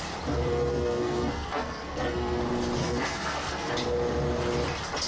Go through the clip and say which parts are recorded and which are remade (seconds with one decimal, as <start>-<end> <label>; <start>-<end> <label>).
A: 0.0-0.5 recorded; 0.5-2.4 remade; 2.4-2.8 recorded; 2.8-3.7 remade; 3.7-5.1 recorded